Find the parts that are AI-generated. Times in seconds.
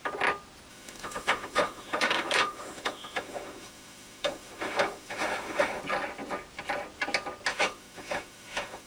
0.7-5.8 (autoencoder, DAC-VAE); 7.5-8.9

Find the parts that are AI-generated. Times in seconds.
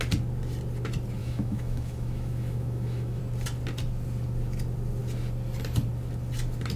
1.2-3.2 (autoencoder, DAC-VAE)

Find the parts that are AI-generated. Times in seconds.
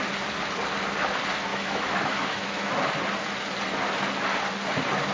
1.5-2.7 (autoencoder, DAC-VAE)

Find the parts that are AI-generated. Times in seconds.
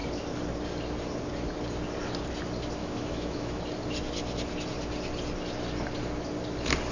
2.8-3.6 (autoencoder, DAC-VAE)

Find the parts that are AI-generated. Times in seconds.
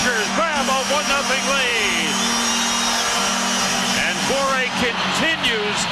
0.0-0.9 (autoencoder, DAC-VAE)